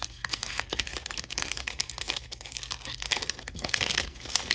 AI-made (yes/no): yes